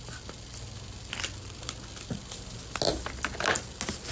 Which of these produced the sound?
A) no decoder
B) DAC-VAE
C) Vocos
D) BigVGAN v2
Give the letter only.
A